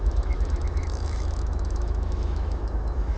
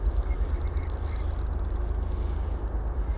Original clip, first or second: second